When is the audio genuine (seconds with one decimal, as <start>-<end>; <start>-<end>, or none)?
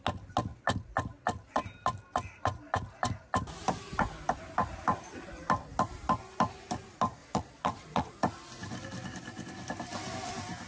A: 0.0-7.2; 8.1-10.7